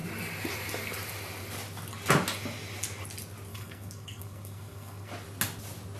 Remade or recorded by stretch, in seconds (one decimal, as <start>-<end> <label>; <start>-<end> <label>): 0.0-3.5 recorded; 3.5-5.1 remade; 5.1-6.0 recorded